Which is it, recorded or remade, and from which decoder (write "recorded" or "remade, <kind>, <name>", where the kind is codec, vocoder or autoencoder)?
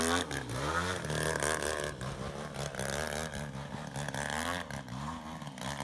recorded